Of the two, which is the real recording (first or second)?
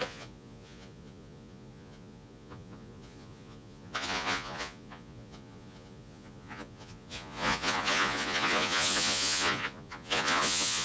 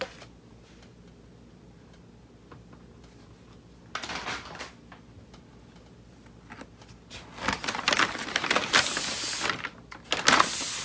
second